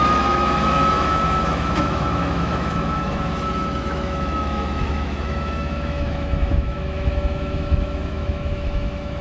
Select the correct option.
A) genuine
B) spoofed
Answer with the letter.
B